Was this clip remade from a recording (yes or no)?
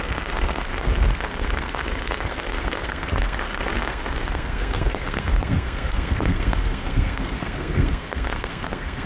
yes